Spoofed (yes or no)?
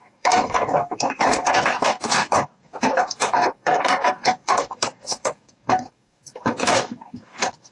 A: yes